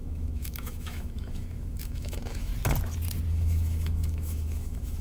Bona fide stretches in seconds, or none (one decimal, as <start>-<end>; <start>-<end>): 2.5-3.3